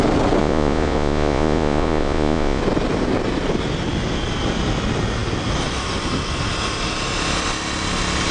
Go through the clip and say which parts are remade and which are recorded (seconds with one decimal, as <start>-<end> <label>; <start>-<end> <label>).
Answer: 0.0-0.4 recorded; 0.4-2.6 remade; 2.6-8.3 recorded